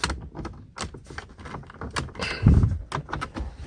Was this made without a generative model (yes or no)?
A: yes